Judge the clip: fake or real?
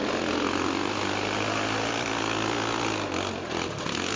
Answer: real